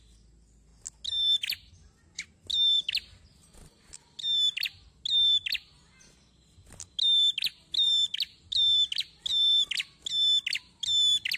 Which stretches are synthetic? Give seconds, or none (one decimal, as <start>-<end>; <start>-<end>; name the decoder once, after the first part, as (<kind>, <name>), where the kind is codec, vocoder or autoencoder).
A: none